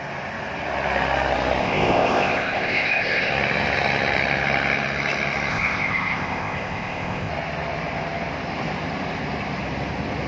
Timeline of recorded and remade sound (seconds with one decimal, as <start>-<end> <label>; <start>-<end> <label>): 0.0-1.6 recorded; 1.6-3.3 remade; 3.3-5.5 recorded; 5.5-7.3 remade; 7.3-10.3 recorded